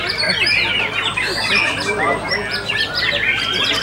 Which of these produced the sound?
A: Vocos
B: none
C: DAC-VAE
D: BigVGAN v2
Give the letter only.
B